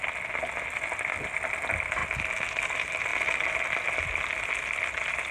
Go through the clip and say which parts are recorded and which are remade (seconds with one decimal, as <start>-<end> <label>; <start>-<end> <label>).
0.0-5.3 recorded